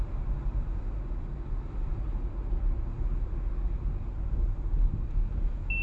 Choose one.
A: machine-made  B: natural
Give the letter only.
B